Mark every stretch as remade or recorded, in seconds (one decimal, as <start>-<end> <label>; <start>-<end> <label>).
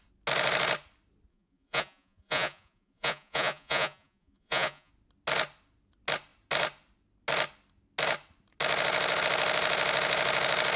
0.0-1.3 recorded; 1.3-4.9 remade; 4.9-10.8 recorded